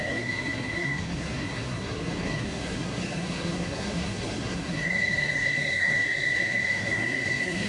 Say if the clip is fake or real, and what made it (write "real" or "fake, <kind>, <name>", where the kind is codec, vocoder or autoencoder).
fake, codec, SNAC